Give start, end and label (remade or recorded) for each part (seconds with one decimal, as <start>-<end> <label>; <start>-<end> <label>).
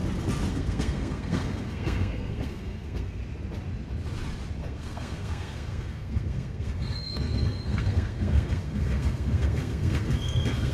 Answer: 0.0-0.5 recorded; 0.5-3.2 remade; 3.2-4.6 recorded; 4.6-10.7 remade